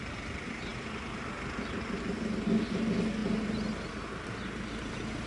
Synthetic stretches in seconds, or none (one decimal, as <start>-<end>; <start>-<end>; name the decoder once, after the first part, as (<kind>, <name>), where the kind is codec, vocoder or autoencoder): none